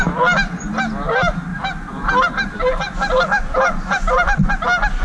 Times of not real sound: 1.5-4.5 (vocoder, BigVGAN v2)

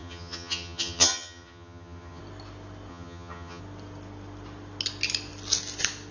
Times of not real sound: 0.0-2.2 (vocoder, HiFi-GAN); 2.9-3.6